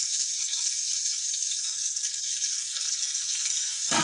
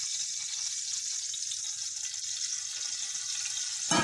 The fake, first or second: first